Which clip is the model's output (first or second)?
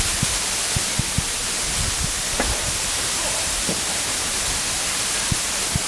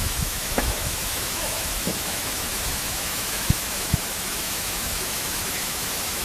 second